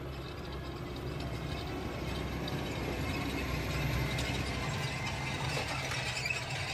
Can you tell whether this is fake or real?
real